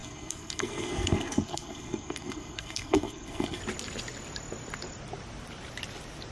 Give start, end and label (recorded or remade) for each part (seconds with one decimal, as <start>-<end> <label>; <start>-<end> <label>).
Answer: 0.0-3.6 remade; 3.6-6.3 recorded